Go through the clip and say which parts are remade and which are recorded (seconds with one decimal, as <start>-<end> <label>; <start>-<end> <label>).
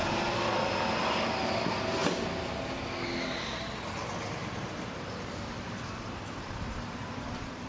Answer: 0.0-7.7 recorded